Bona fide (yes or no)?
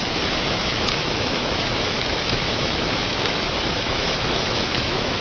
no